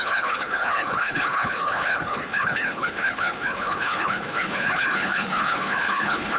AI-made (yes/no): yes